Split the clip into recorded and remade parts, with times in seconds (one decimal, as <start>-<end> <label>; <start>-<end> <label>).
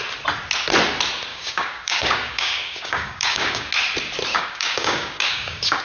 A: 0.0-1.3 recorded; 1.3-3.7 remade; 3.7-4.3 recorded; 4.3-5.8 remade